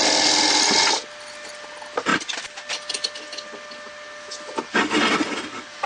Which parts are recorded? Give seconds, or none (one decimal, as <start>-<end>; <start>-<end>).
0.0-5.9